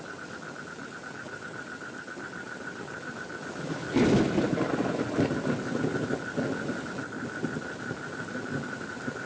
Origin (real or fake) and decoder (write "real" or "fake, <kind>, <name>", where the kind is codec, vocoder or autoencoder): real